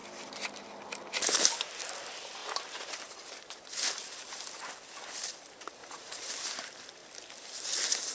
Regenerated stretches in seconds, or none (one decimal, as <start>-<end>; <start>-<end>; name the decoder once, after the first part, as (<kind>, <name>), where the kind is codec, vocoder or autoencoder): 5.8-6.3 (vocoder, Vocos)